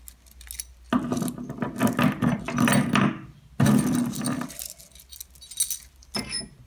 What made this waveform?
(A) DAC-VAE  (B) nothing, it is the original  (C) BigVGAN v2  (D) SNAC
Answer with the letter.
B